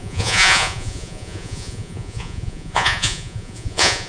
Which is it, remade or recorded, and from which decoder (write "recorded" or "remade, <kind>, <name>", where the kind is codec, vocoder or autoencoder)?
remade, vocoder, Vocos